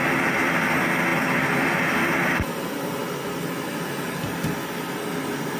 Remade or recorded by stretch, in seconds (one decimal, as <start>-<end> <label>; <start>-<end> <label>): 0.0-5.6 recorded